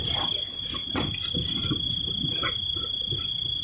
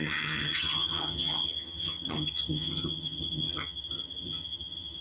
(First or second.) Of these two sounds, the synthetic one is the second